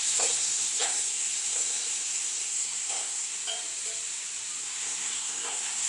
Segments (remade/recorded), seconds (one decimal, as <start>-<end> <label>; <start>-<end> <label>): 0.0-3.3 remade; 3.3-4.6 recorded; 4.6-5.9 remade